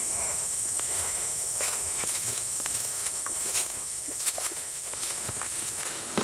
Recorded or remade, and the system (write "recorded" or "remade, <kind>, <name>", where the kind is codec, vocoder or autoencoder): remade, autoencoder, DAC-VAE